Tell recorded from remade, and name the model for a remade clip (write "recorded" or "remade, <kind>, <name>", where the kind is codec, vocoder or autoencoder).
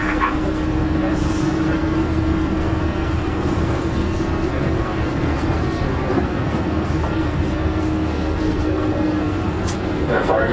remade, codec, SNAC